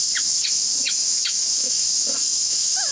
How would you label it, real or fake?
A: fake